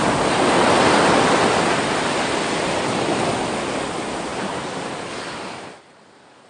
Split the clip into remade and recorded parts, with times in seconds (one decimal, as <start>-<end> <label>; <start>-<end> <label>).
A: 0.0-6.5 recorded